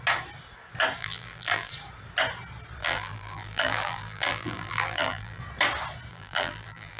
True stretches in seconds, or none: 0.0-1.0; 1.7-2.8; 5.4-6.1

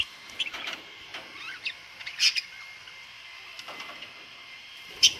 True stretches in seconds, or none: 1.1-4.2